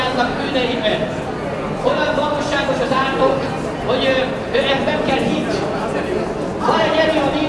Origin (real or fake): real